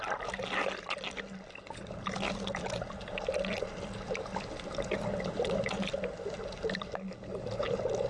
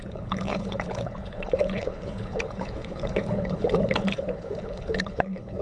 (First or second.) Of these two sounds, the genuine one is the first